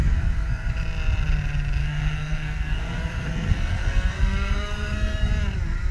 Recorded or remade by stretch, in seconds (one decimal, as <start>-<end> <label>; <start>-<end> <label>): 0.0-0.7 remade; 0.7-1.8 recorded; 1.8-5.3 remade; 5.3-5.9 recorded